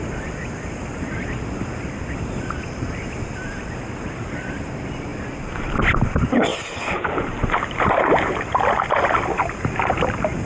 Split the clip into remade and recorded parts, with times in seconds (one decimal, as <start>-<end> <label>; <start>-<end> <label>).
0.0-6.5 recorded; 6.5-8.3 remade; 8.3-10.5 recorded

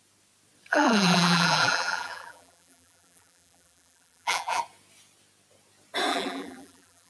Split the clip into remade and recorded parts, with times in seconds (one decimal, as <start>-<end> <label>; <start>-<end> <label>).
0.0-0.7 recorded; 0.7-4.6 remade; 4.6-6.1 recorded; 6.1-7.1 remade

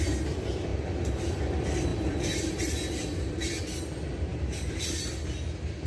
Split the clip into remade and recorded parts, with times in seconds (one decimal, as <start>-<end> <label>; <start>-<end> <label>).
0.0-0.7 recorded; 0.7-1.4 remade; 1.4-1.9 recorded; 1.9-3.6 remade; 3.6-4.3 recorded; 4.3-5.0 remade; 5.0-5.9 recorded

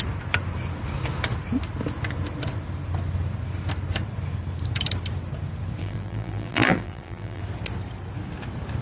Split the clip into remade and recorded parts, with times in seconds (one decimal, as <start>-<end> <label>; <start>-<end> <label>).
0.0-5.8 recorded; 5.8-7.4 remade; 7.4-8.8 recorded